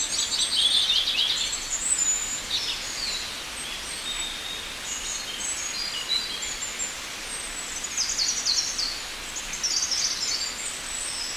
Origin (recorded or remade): recorded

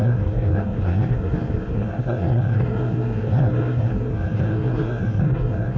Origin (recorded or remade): remade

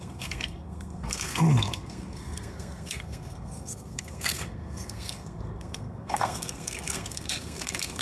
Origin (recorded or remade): remade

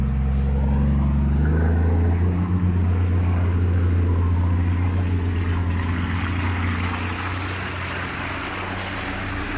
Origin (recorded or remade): recorded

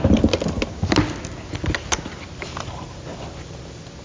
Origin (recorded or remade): recorded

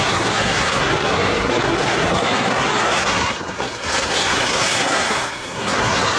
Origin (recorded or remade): remade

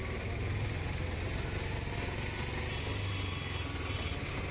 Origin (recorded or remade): recorded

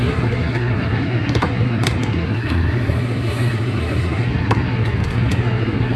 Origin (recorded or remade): remade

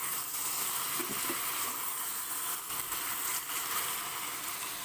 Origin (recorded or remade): recorded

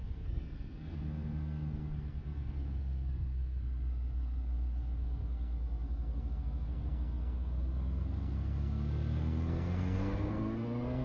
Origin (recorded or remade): remade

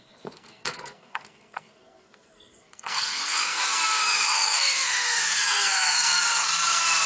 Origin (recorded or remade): remade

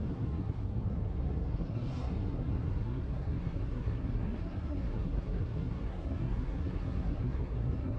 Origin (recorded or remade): remade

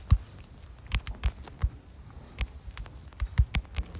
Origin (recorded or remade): recorded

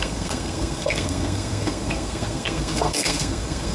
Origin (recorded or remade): remade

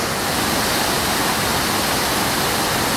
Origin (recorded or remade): recorded